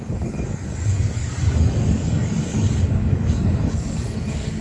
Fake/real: fake